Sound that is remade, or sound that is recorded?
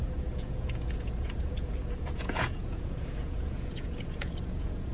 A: remade